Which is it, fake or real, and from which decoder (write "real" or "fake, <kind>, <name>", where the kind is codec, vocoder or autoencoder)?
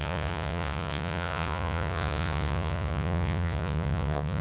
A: fake, vocoder, Vocos